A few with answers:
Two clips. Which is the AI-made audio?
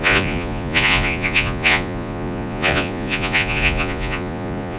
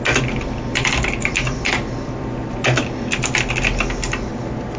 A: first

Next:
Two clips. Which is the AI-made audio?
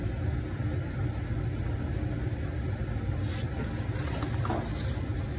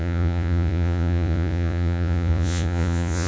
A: second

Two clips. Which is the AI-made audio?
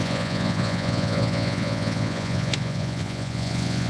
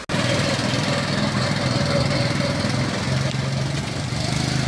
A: first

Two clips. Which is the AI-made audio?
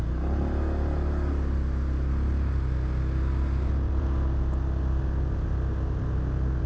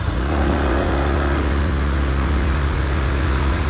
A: second